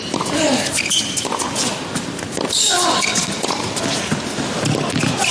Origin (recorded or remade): recorded